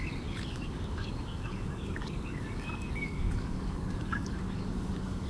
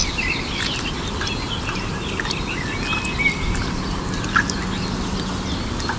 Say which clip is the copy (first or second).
first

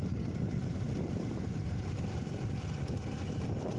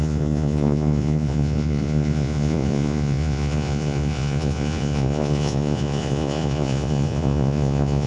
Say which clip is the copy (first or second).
second